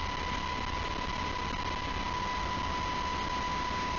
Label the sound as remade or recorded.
recorded